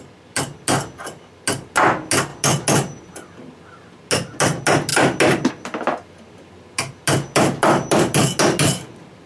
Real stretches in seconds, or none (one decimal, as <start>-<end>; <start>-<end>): 0.0-9.3